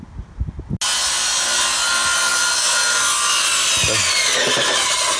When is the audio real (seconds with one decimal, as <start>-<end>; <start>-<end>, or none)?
0.0-5.2

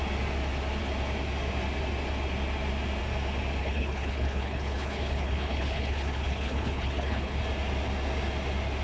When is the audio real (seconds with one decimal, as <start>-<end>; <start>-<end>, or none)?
0.0-3.6; 7.4-8.8

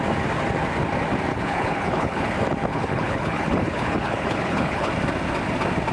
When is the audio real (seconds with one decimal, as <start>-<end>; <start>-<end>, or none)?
0.0-1.3; 2.2-2.7; 4.9-5.9

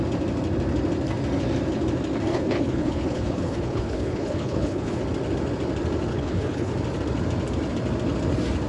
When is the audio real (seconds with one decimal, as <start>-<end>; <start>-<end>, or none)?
0.0-2.3; 5.0-6.1; 6.7-8.7

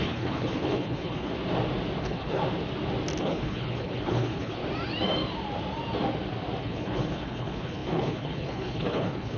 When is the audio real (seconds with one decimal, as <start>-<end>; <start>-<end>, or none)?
1.3-2.0; 2.4-3.2; 4.6-6.6

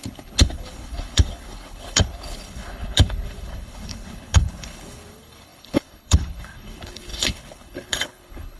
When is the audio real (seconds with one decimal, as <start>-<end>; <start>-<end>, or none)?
none